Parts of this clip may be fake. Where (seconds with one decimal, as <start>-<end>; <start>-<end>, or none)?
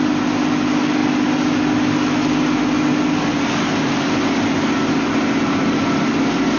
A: none